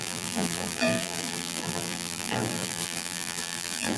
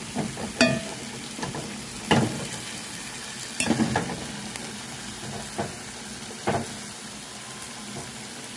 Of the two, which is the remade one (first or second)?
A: first